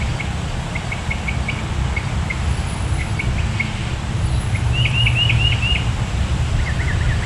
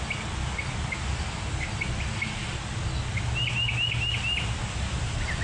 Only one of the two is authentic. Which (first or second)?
second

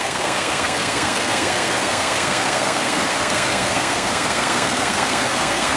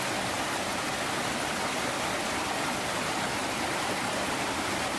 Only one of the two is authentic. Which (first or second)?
second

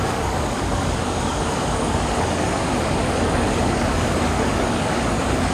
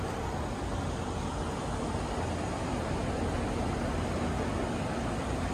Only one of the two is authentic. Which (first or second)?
second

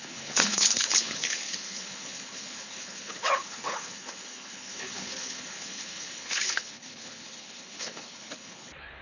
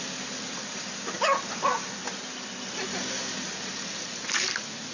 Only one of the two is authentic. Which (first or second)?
second